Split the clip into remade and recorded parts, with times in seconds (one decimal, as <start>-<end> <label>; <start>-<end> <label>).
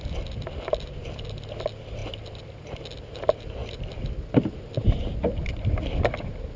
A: 0.0-6.6 recorded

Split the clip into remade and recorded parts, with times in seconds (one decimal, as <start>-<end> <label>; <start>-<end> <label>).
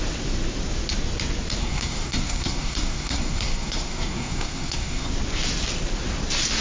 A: 0.0-1.6 recorded; 1.6-5.1 remade; 5.1-6.6 recorded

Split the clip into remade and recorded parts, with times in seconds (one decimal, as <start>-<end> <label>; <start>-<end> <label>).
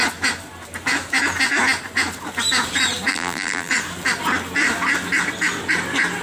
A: 0.0-3.1 recorded; 3.1-3.7 remade; 3.7-6.2 recorded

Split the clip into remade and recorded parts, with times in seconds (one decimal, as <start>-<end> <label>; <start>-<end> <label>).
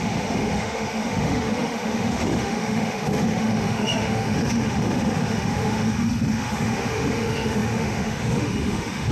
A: 0.0-9.1 remade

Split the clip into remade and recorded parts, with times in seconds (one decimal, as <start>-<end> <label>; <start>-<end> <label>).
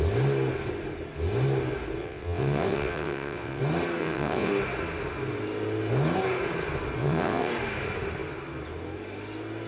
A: 0.0-2.0 recorded; 2.0-3.6 remade; 3.6-4.0 recorded; 4.0-4.5 remade; 4.5-7.0 recorded; 7.0-7.5 remade; 7.5-9.7 recorded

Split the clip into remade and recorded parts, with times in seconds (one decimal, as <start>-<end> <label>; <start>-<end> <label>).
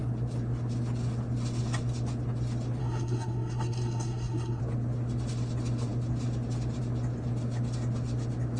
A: 0.0-2.8 recorded; 2.8-4.6 remade; 4.6-8.6 recorded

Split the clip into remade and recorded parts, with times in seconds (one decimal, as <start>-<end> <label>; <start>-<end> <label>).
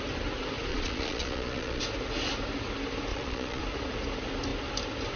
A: 0.0-0.7 recorded; 0.7-1.8 remade; 1.8-3.1 recorded; 3.1-3.6 remade; 3.6-5.2 recorded